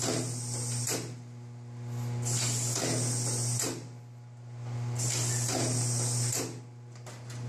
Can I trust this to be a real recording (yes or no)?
yes